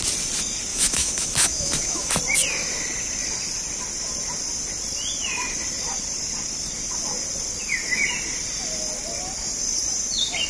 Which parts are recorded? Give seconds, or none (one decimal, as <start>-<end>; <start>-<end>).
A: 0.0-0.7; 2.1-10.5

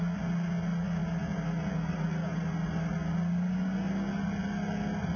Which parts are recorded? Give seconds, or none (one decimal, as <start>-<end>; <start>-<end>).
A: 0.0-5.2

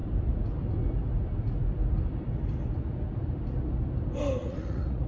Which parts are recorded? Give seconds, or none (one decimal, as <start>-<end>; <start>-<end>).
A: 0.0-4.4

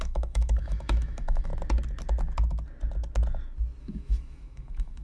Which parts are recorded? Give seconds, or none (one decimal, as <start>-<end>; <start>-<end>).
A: 1.5-3.8

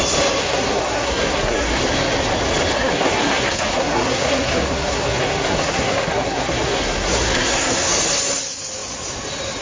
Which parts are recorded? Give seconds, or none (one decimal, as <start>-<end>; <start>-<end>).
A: 0.0-0.4; 1.8-2.7; 7.9-9.6